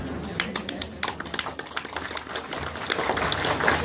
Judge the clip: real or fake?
real